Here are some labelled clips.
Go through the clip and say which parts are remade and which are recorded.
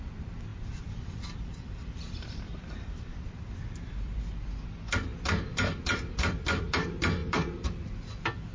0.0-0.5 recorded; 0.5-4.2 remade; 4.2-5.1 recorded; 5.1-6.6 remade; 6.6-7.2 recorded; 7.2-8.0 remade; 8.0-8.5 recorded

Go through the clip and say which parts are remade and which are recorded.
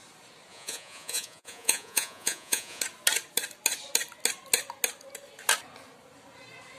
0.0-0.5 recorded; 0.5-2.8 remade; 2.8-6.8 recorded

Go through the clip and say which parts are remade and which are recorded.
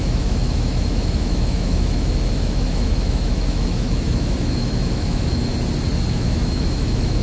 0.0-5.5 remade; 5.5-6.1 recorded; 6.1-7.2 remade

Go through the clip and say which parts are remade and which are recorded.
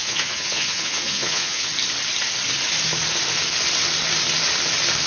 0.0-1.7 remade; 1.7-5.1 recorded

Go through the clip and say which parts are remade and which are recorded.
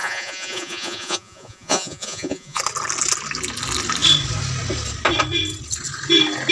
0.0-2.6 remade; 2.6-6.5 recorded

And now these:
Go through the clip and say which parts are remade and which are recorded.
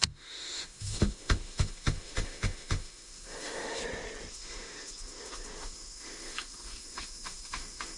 0.0-3.8 remade; 3.8-4.3 recorded; 4.3-8.0 remade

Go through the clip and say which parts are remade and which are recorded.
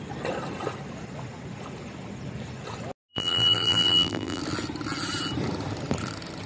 0.0-3.1 recorded; 3.1-4.4 remade; 4.4-6.5 recorded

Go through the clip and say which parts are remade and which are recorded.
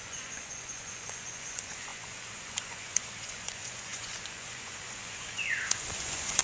0.0-6.4 remade